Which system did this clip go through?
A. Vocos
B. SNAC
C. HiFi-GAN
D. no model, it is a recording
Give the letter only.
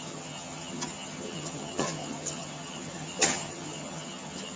C